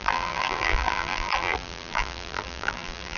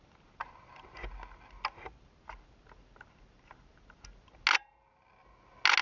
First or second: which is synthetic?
first